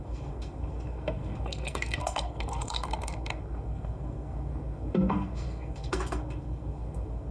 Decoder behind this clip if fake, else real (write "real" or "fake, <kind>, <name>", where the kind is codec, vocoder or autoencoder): fake, codec, SNAC